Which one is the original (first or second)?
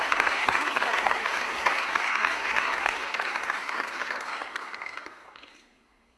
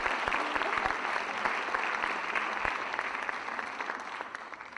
second